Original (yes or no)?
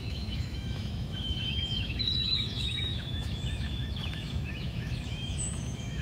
no